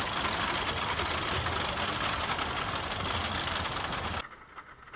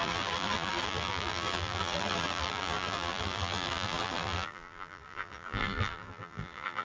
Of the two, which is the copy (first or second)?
second